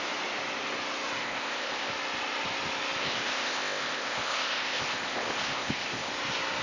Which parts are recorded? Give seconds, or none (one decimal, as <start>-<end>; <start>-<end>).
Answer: 0.0-1.2; 1.9-3.0; 6.1-6.6